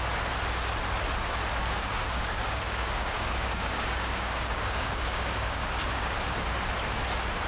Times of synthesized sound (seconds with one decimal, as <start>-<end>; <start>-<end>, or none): 1.6-6.1

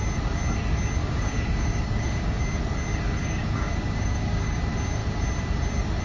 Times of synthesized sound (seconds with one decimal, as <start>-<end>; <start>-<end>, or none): 1.0-2.4; 3.2-4.6

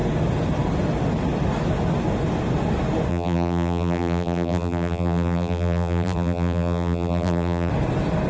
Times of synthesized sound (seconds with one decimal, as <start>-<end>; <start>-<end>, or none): 3.1-7.7

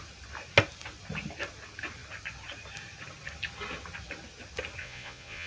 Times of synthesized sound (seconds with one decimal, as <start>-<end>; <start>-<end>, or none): 4.8-5.5